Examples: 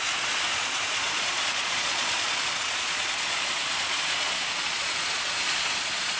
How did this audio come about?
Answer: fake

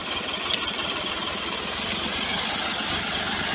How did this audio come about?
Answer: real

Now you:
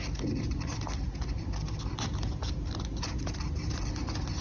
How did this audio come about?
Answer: real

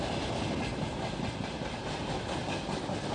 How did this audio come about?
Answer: real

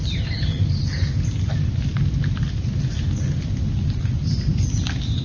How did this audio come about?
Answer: real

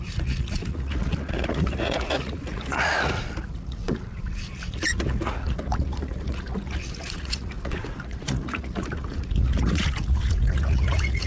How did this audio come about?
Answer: fake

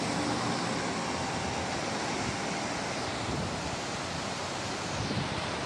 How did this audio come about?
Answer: real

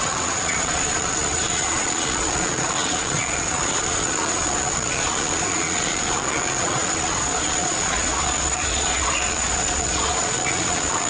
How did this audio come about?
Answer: fake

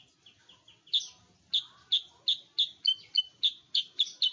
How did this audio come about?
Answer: real